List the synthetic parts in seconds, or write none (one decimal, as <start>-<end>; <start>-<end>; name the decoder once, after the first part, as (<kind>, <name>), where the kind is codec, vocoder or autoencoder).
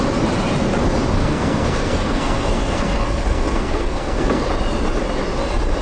1.2-4.5 (codec, SNAC)